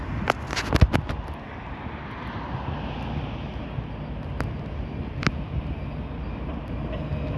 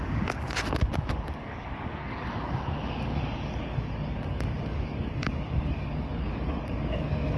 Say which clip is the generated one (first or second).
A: second